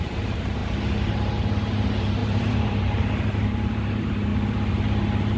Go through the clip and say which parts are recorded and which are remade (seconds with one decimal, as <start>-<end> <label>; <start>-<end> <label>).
0.0-0.6 remade; 0.6-1.1 recorded; 1.1-4.3 remade; 4.3-5.4 recorded